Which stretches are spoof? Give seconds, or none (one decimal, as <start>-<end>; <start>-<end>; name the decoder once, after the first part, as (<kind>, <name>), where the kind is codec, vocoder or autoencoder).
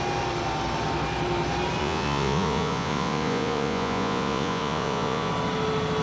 1.8-5.3 (vocoder, Vocos)